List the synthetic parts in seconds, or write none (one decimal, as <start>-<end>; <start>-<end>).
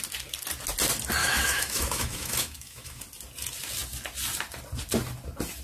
1.2-3.0